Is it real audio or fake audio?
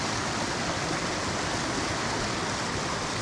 real